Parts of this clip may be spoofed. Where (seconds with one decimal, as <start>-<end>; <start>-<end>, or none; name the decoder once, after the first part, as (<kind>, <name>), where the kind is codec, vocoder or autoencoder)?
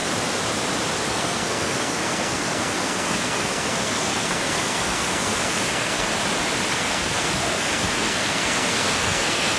1.1-6.1 (codec, SNAC); 6.7-9.6